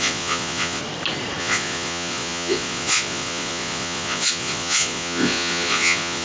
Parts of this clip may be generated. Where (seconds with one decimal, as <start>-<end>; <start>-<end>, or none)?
0.0-0.8; 1.4-6.2